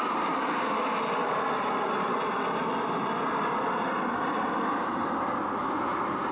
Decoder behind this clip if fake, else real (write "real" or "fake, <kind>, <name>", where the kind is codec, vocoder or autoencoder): real